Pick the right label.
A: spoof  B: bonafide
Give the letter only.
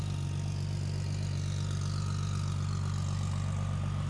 B